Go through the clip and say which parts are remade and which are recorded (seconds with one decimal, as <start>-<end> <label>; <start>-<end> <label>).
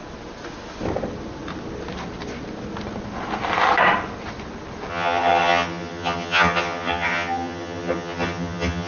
0.0-4.9 recorded; 4.9-8.9 remade